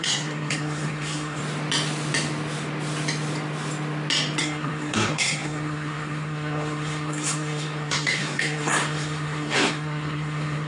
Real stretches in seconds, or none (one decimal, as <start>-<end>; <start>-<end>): 1.4-4.4